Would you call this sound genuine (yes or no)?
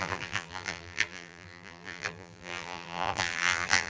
no